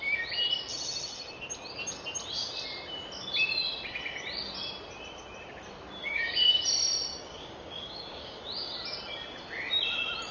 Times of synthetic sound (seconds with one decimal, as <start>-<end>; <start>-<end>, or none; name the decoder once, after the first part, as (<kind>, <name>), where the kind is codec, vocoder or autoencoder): 6.0-6.6 (codec, DAC); 7.1-8.4